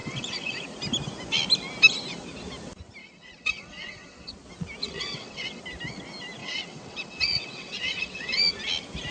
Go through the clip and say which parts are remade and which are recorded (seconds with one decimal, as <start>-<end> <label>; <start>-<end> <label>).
0.0-0.6 remade; 0.6-3.0 recorded; 3.0-4.3 remade; 4.3-4.8 recorded; 4.8-5.6 remade; 5.6-6.4 recorded; 6.4-8.4 remade; 8.4-9.1 recorded